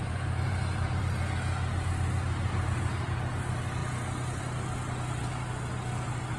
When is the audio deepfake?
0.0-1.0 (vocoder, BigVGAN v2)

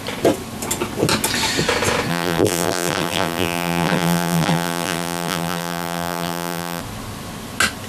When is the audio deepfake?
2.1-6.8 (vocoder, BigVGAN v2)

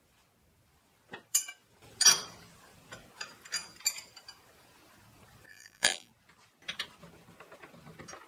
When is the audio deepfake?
5.5-6.1 (vocoder, BigVGAN v2)